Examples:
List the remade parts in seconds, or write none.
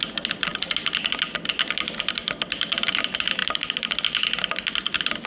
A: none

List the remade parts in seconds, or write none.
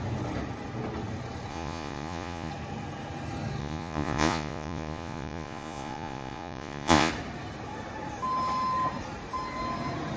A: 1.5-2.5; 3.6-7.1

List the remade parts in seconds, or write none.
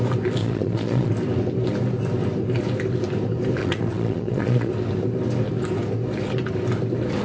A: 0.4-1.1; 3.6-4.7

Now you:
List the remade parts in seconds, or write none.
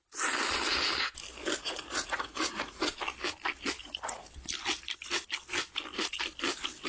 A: 1.6-2.9; 3.8-4.3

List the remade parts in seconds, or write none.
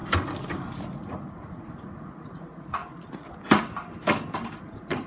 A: 1.0-2.8; 4.6-5.1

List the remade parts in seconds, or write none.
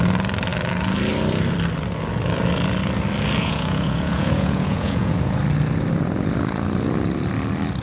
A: 3.4-5.4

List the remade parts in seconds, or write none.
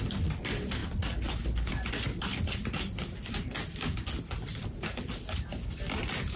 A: none